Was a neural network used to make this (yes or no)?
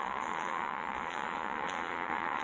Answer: yes